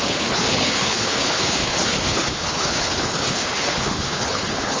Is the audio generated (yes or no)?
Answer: yes